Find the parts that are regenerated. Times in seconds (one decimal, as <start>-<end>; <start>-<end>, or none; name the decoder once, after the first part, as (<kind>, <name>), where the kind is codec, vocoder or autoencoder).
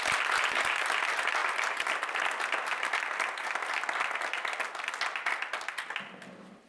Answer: none